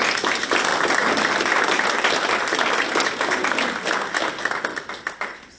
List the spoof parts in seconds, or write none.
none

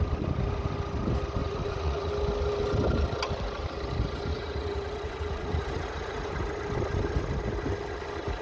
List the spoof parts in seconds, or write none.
1.4-2.1; 4.3-6.3

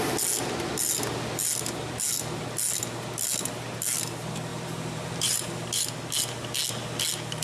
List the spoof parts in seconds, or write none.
4.5-5.9

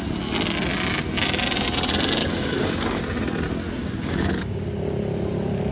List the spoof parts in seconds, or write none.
2.2-3.0; 3.8-4.6